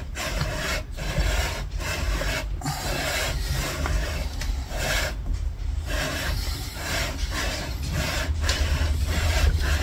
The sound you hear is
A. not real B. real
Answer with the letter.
A